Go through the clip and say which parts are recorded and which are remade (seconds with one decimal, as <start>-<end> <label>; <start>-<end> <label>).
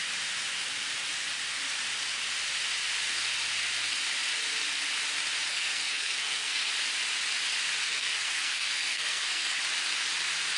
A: 0.0-5.5 recorded; 5.5-6.7 remade; 6.7-7.8 recorded; 7.8-9.6 remade; 9.6-10.6 recorded